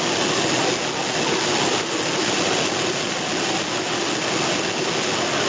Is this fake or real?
real